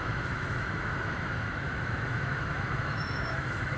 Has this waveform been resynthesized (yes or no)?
yes